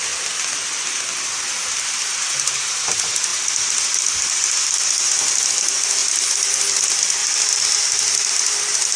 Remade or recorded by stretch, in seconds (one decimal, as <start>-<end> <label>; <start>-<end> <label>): 0.0-3.3 recorded; 3.3-4.9 remade; 4.9-6.0 recorded; 6.0-6.5 remade; 6.5-7.2 recorded; 7.2-7.8 remade; 7.8-9.0 recorded